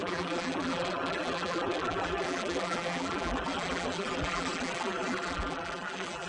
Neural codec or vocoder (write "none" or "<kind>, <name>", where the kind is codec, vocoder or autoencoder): vocoder, BigVGAN v2